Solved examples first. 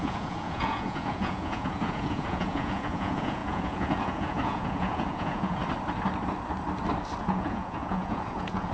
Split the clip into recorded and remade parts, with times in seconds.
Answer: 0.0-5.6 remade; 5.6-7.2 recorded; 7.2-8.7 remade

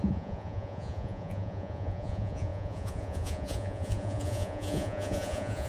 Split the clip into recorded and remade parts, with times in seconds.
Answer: 0.0-5.7 remade

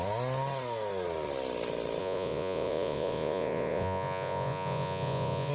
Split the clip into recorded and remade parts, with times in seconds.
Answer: 0.0-2.0 recorded; 2.0-5.5 remade